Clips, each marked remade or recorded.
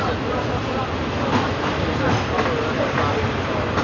recorded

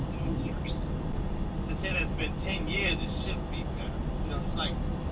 recorded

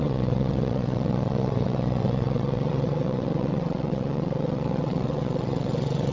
remade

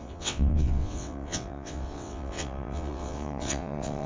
remade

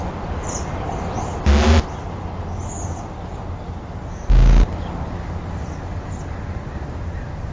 recorded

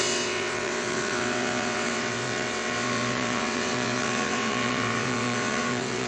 remade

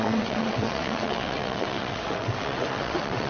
remade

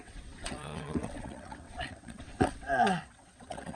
remade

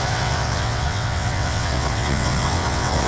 remade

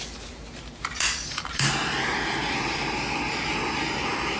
recorded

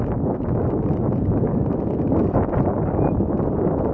recorded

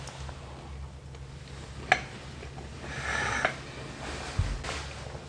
recorded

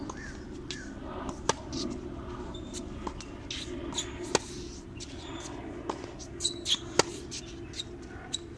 recorded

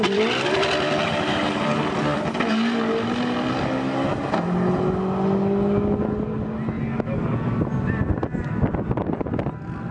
recorded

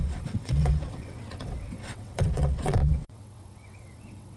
remade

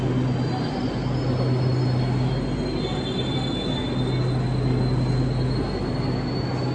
recorded